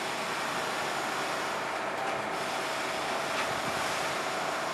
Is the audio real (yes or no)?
yes